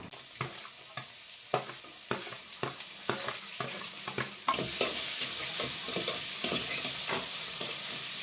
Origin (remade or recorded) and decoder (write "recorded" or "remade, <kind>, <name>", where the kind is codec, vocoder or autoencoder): recorded